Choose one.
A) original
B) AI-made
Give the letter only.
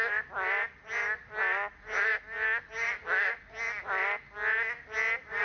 A